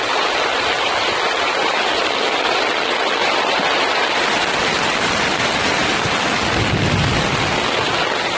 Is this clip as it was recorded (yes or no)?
yes